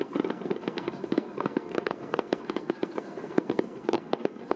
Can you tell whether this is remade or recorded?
remade